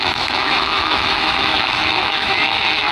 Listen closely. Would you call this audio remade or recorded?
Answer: remade